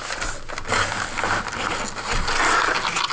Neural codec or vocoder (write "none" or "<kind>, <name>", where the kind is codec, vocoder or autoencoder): none